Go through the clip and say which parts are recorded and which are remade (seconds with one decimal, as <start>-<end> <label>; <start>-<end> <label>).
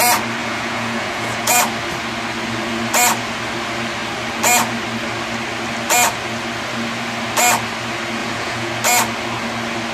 0.0-0.4 recorded; 0.4-1.6 remade; 1.6-8.2 recorded; 8.2-8.7 remade; 8.7-9.9 recorded